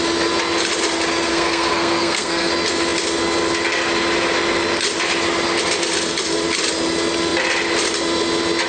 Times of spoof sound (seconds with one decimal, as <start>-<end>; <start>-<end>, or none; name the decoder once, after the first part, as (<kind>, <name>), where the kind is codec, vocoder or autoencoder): 1.3-2.5 (codec, SNAC)